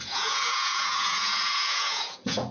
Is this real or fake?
fake